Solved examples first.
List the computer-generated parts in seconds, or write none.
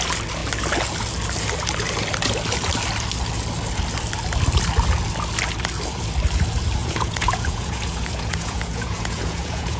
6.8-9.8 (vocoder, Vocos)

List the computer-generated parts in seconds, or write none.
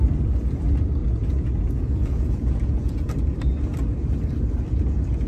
1.0-3.1 (vocoder, Vocos)